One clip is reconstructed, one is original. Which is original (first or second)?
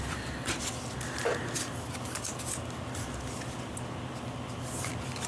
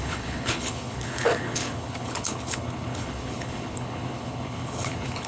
first